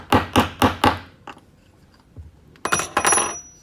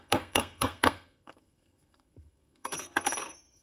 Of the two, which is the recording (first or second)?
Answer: first